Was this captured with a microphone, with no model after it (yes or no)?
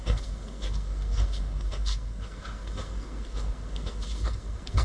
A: no